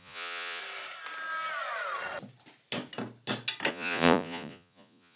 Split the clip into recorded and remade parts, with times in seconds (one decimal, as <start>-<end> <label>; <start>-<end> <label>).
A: 0.0-0.6 remade; 0.6-3.7 recorded; 3.7-5.2 remade